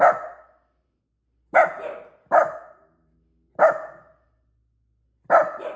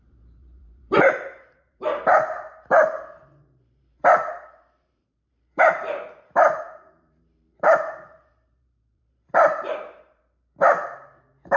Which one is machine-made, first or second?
second